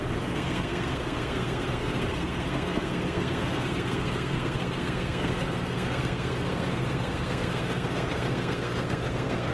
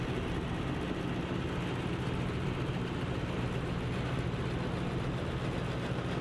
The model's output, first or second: first